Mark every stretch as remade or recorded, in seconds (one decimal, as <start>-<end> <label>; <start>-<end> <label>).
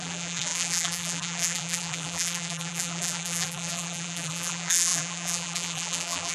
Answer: 0.0-6.3 remade